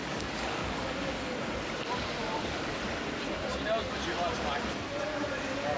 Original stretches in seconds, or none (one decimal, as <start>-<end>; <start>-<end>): 1.2-2.2; 2.8-5.8